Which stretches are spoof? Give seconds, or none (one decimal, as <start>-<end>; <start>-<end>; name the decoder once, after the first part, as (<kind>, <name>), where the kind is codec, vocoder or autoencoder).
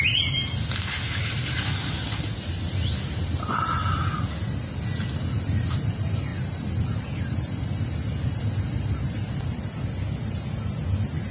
none